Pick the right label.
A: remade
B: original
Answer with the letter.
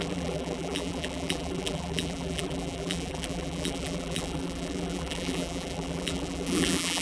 A